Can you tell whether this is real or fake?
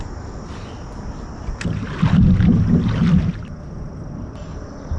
real